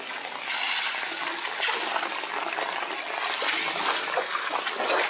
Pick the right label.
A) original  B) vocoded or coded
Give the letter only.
A